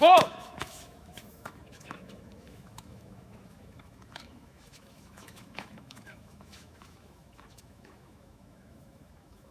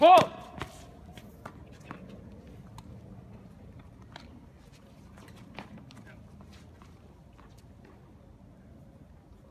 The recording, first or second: second